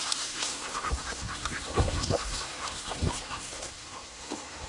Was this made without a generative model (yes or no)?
no